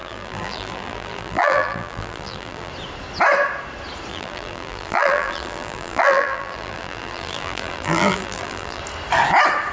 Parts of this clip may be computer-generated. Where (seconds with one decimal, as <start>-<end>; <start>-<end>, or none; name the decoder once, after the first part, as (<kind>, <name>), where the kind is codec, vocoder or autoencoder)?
0.0-2.7 (vocoder, BigVGAN v2); 4.1-8.8